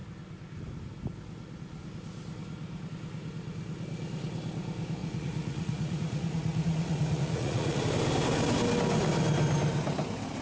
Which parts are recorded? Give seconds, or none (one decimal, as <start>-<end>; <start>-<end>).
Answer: 0.0-5.0; 7.8-10.4